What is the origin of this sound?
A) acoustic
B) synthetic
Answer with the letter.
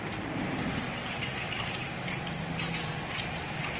A